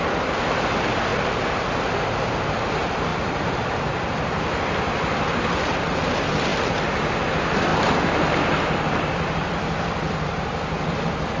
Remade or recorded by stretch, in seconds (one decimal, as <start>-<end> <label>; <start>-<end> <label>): 0.0-11.4 recorded